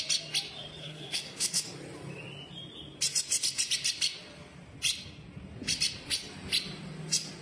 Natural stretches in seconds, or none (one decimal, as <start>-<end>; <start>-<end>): 0.0-0.8; 1.6-7.4